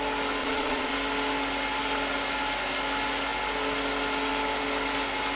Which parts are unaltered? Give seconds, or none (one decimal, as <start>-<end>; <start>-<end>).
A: 0.0-0.4; 0.9-5.4